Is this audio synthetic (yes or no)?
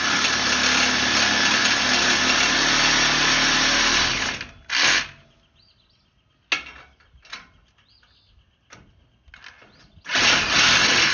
no